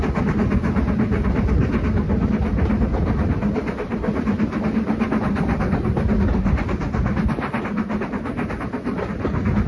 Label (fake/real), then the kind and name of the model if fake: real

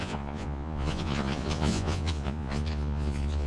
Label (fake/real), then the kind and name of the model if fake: fake, vocoder, Vocos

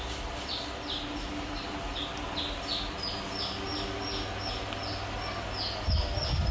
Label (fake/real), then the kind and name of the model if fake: real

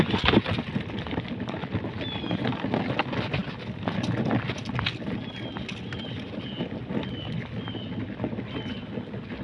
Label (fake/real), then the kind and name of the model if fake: real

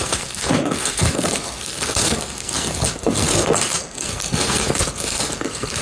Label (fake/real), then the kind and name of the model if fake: fake, codec, SNAC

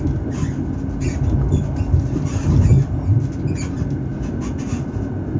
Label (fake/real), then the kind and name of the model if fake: real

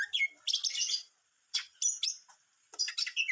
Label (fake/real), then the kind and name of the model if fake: real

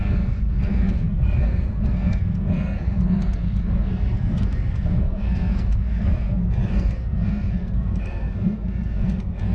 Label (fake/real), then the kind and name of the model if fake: fake, codec, SNAC